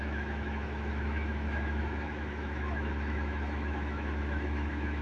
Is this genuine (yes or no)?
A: no